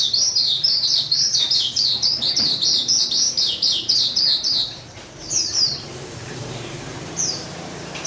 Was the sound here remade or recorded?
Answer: remade